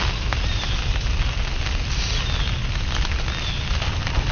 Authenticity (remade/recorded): recorded